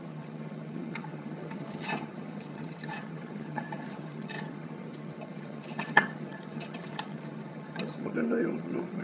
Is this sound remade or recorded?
remade